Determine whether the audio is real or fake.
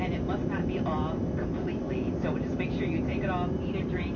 real